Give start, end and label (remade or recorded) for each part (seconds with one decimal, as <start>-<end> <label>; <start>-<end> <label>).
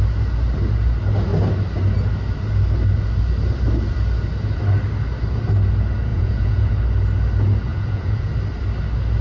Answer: 0.0-6.1 recorded; 6.1-6.7 remade; 6.7-7.7 recorded; 7.7-8.3 remade; 8.3-9.2 recorded